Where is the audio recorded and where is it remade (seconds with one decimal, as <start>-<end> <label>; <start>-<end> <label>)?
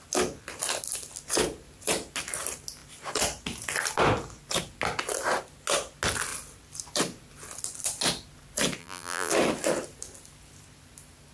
0.0-8.8 recorded; 8.8-9.3 remade; 9.3-11.3 recorded